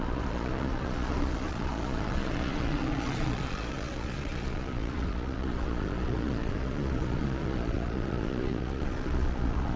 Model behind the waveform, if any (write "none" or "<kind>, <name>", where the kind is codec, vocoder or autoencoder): vocoder, Vocos